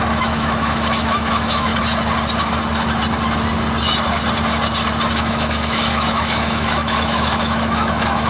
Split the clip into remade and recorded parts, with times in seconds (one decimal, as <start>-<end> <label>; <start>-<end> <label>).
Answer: 0.0-1.7 remade; 1.7-5.1 recorded; 5.1-8.3 remade